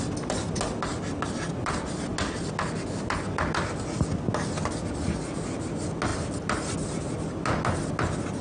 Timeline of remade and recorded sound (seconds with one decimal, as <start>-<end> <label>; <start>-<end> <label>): 0.0-8.4 recorded